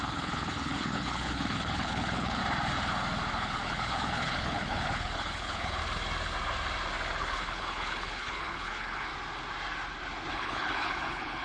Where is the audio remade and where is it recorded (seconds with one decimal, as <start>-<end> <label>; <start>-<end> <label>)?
0.0-2.4 remade; 2.4-3.3 recorded; 3.3-5.8 remade; 5.8-7.2 recorded; 7.2-9.1 remade; 9.1-10.3 recorded; 10.3-11.4 remade

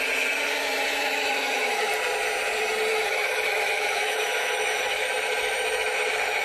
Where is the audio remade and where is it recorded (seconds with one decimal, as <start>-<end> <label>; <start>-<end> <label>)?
0.0-1.0 recorded; 1.0-1.9 remade; 1.9-2.9 recorded; 2.9-6.4 remade

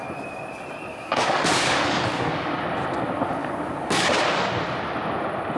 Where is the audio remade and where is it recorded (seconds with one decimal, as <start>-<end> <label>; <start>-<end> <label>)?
0.0-0.9 recorded; 0.9-2.5 remade; 2.5-3.4 recorded; 3.4-4.2 remade; 4.2-5.6 recorded

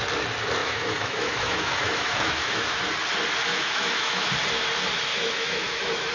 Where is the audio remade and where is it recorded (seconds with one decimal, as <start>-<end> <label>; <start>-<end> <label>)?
0.0-0.6 recorded; 0.6-2.8 remade; 2.8-3.5 recorded; 3.5-4.3 remade; 4.3-5.1 recorded; 5.1-6.1 remade

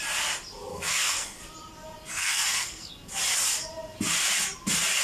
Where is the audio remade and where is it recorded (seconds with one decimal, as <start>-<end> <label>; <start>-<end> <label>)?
0.0-0.7 recorded; 0.7-1.4 remade; 1.4-2.1 recorded; 2.1-2.9 remade; 2.9-5.0 recorded

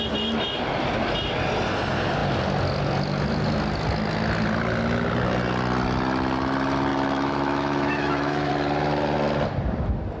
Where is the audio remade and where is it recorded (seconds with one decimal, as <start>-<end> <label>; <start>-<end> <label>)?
0.0-6.9 recorded; 6.9-8.5 remade; 8.5-10.2 recorded

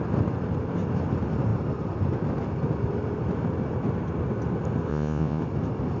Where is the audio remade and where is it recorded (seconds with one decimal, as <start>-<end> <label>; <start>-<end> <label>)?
0.0-4.9 recorded; 4.9-5.4 remade; 5.4-6.0 recorded

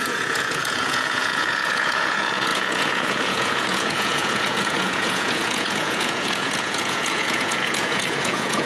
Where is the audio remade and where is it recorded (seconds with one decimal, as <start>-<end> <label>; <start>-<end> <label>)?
0.0-8.7 remade